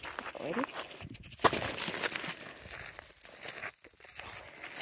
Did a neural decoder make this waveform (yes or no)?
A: no